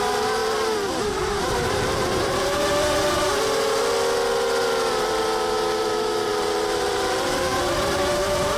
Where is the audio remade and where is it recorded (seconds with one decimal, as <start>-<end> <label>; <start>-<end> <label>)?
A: 0.0-2.6 remade; 2.6-4.9 recorded; 4.9-8.6 remade